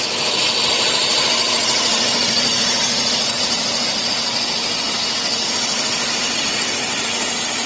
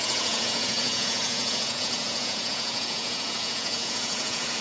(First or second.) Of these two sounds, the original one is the first